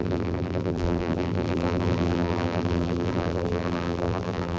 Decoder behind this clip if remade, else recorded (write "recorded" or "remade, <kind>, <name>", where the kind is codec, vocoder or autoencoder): remade, vocoder, BigVGAN v2